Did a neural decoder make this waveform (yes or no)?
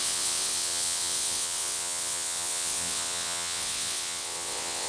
yes